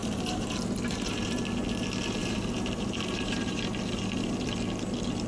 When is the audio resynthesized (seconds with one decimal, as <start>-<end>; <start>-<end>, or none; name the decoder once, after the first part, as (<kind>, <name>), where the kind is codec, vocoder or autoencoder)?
0.0-1.4 (vocoder, BigVGAN v2); 2.2-3.6